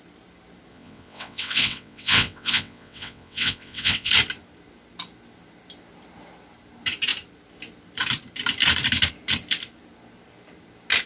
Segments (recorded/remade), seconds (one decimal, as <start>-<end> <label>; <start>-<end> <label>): 0.0-0.7 recorded; 0.7-4.1 remade; 4.1-11.1 recorded

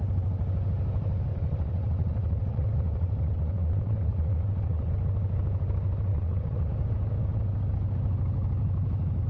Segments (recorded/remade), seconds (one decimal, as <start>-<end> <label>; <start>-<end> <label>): 0.0-1.3 recorded; 1.3-4.9 remade; 4.9-6.1 recorded; 6.1-6.7 remade; 6.7-9.3 recorded

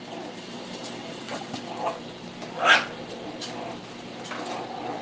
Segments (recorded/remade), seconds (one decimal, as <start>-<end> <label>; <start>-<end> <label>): 0.0-1.0 recorded; 1.0-1.6 remade; 1.6-5.0 recorded

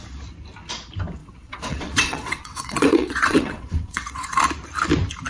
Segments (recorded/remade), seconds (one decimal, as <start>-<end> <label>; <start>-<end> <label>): 0.0-1.2 recorded; 1.2-4.4 remade; 4.4-5.3 recorded